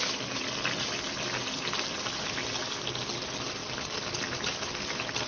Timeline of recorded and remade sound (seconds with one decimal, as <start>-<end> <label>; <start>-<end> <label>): 0.0-5.3 recorded